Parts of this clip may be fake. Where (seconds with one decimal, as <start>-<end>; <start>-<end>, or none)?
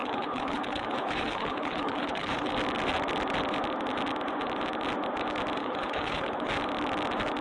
0.0-2.5; 5.6-6.5